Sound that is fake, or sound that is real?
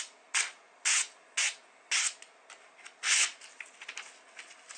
real